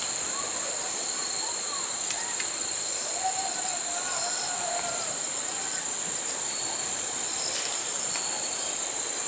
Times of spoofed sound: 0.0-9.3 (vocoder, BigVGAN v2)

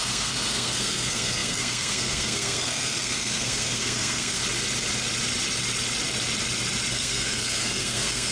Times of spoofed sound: 0.0-4.4 (codec, SNAC); 6.9-8.3